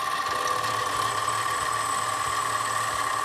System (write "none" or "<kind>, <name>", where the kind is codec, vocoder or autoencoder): none